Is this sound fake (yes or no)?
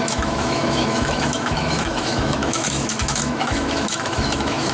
yes